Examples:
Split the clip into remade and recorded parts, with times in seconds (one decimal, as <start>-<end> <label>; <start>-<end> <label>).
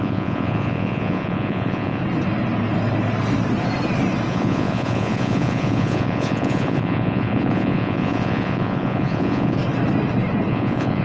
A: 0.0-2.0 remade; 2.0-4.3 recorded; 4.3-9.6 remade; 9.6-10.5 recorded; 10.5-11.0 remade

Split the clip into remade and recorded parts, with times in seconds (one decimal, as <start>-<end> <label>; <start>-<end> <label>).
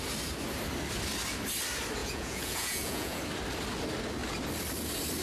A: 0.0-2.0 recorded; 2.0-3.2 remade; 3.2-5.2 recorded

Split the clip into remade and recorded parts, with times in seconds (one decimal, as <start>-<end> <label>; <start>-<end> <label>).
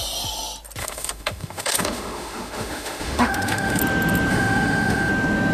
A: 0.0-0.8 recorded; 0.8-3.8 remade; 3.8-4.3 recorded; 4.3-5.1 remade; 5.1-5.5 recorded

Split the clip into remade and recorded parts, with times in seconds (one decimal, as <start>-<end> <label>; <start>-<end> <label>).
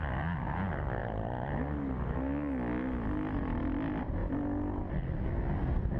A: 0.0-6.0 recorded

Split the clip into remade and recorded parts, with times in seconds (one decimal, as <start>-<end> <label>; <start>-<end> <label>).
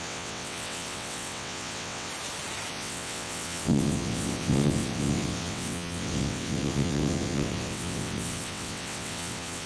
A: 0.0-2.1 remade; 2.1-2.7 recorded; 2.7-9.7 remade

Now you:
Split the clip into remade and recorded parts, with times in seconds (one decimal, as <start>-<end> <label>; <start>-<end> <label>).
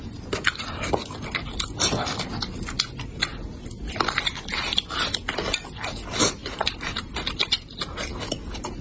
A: 0.0-6.4 recorded; 6.4-7.1 remade; 7.1-8.8 recorded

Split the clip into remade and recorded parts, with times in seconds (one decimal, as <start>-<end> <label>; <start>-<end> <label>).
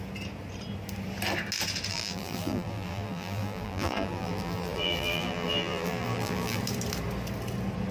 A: 0.0-1.9 recorded; 1.9-6.6 remade; 6.6-7.9 recorded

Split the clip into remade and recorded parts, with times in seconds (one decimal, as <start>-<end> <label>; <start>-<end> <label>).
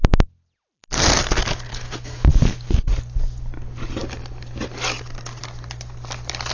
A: 0.0-1.7 recorded; 1.7-2.3 remade; 2.3-6.5 recorded